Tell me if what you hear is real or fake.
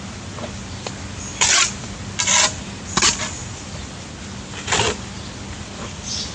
real